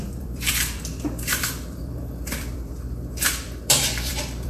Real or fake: fake